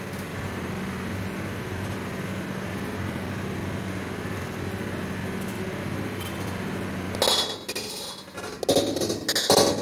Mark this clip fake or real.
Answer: real